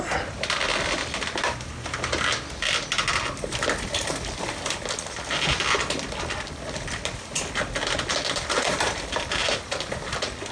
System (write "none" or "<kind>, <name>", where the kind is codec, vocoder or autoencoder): none